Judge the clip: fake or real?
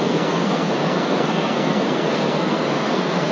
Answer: fake